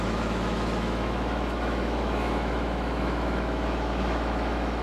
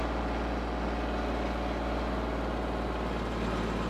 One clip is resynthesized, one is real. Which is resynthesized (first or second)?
first